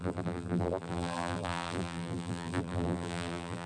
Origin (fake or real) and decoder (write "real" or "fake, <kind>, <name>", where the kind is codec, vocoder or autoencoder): fake, vocoder, BigVGAN v2